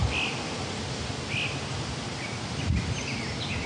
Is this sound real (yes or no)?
yes